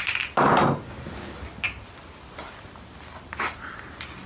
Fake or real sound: real